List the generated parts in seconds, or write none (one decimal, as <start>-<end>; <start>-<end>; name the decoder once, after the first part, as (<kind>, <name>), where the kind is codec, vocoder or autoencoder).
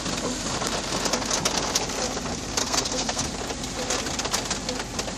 2.6-3.3 (codec, SNAC)